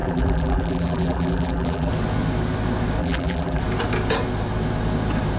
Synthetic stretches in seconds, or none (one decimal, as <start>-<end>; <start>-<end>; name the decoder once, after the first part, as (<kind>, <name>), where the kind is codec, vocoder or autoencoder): 0.0-1.9 (vocoder, BigVGAN v2); 3.0-3.6